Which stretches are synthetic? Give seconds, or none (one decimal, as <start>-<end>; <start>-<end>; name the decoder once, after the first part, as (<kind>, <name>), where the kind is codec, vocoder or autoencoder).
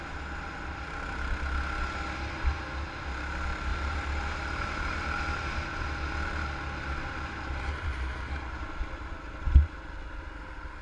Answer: 3.7-5.2 (vocoder, BigVGAN v2)